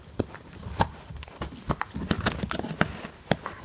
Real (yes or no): yes